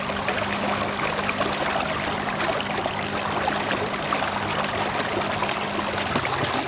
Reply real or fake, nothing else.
real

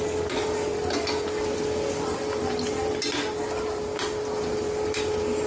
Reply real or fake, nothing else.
real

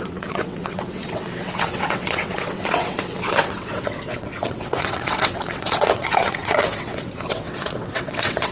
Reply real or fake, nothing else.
fake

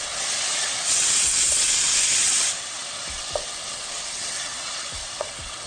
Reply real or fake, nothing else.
fake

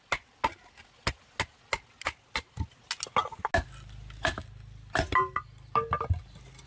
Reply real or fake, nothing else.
real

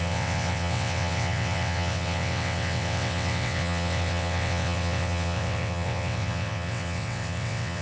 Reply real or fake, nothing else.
fake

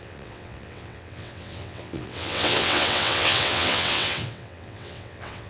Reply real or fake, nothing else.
fake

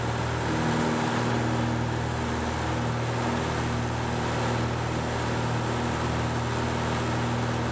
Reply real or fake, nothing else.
real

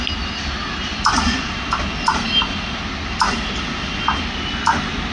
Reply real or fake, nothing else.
real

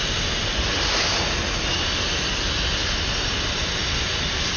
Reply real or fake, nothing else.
real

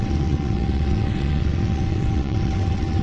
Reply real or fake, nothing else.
fake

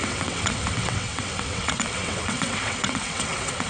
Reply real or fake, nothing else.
fake